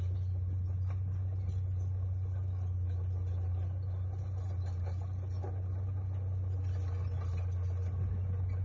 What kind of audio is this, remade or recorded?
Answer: recorded